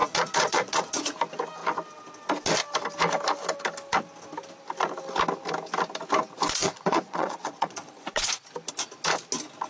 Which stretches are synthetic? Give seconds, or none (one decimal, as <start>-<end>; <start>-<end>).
0.0-1.1; 6.6-8.3